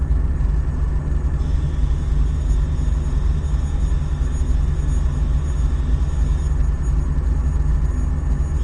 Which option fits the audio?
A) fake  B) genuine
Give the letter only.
B